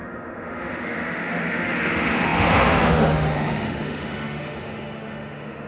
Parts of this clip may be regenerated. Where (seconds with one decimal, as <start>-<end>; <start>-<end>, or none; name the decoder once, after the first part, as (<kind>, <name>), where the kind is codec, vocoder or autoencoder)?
0.0-5.7 (autoencoder, DAC-VAE)